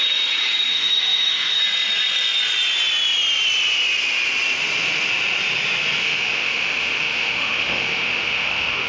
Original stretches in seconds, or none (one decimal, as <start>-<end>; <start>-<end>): 0.0-0.7; 1.6-6.0